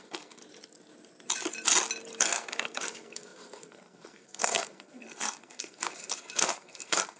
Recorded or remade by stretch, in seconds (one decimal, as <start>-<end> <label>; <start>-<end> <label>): 0.0-0.4 remade; 0.4-2.2 recorded; 2.2-7.2 remade